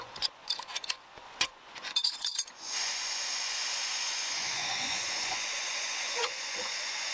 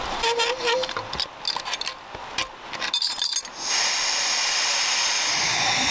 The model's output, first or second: first